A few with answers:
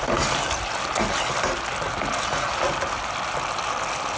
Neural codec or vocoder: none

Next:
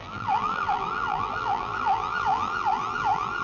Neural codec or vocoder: vocoder, BigVGAN v2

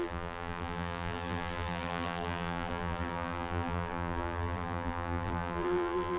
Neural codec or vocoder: vocoder, BigVGAN v2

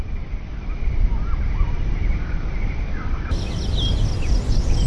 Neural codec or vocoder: vocoder, BigVGAN v2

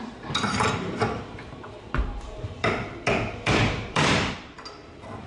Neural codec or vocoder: vocoder, BigVGAN v2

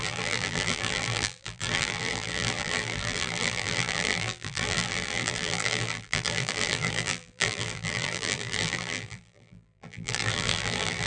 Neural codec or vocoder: vocoder, BigVGAN v2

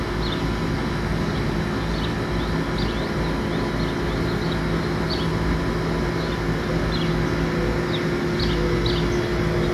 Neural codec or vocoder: none